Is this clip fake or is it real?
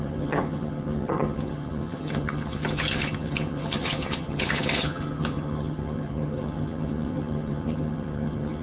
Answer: fake